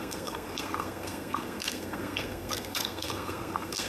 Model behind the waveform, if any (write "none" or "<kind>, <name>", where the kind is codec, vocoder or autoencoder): codec, SNAC